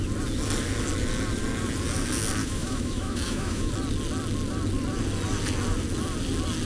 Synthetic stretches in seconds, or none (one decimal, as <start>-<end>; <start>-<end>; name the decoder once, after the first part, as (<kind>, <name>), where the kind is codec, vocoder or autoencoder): 2.4-3.7 (autoencoder, DAC-VAE)